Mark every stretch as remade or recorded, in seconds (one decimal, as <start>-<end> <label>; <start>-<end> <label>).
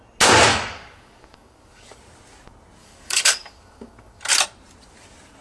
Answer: 0.0-0.5 recorded; 0.5-2.0 remade; 2.0-2.8 recorded; 2.8-4.2 remade; 4.2-5.4 recorded